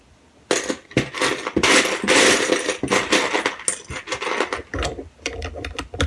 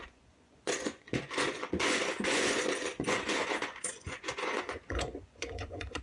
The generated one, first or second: second